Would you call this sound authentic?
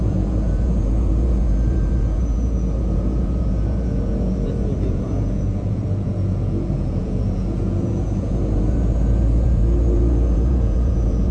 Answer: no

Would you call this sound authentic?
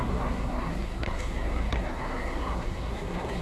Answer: no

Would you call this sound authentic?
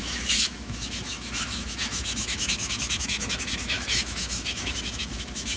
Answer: no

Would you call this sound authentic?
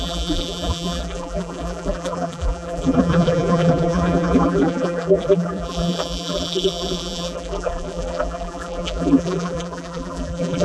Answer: no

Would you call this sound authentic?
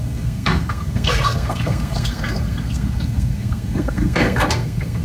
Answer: no